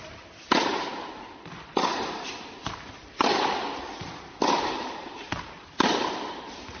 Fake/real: real